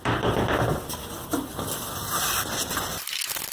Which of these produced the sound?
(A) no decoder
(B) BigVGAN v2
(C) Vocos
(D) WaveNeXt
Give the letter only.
A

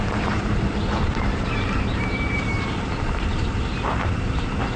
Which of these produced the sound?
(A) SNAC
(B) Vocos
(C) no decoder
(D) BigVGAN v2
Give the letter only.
D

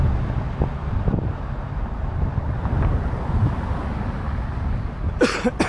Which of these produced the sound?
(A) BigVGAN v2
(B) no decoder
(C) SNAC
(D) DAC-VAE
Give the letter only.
B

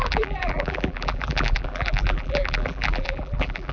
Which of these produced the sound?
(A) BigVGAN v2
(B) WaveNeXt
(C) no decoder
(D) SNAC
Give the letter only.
A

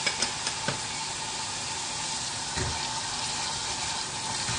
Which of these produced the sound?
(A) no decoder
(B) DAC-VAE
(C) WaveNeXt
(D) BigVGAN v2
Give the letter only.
A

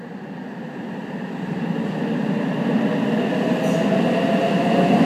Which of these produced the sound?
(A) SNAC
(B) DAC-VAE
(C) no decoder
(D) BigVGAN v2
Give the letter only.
C